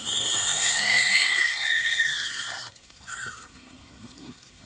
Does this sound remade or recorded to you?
remade